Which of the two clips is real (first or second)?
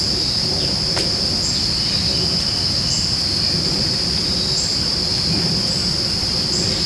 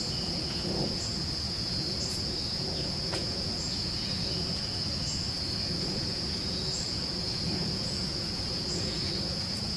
first